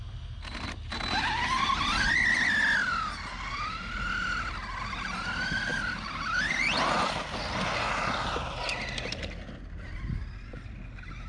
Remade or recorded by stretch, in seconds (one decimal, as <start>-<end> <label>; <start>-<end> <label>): 0.0-11.3 recorded

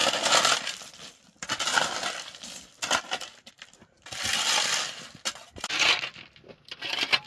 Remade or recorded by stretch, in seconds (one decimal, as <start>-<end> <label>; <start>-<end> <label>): 0.0-7.3 recorded

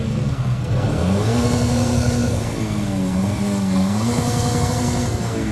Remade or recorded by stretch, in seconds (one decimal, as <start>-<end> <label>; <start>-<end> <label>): 0.0-5.5 remade

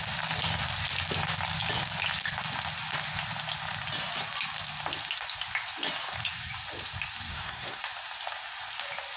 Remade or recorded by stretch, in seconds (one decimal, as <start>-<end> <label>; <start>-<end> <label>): 0.0-7.3 recorded; 7.3-7.8 remade; 7.8-9.2 recorded

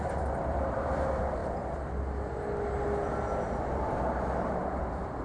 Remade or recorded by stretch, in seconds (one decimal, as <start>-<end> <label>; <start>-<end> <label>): 0.0-1.4 remade; 1.4-4.5 recorded; 4.5-5.2 remade